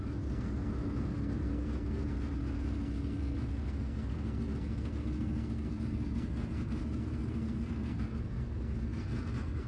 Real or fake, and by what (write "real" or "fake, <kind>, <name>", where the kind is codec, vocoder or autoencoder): fake, codec, SNAC